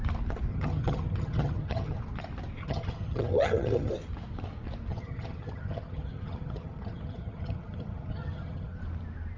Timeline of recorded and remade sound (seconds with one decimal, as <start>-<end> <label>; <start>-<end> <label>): 0.0-0.5 recorded; 0.5-2.0 remade; 2.0-2.6 recorded; 2.6-3.9 remade; 3.9-4.9 recorded; 4.9-8.8 remade; 8.8-9.4 recorded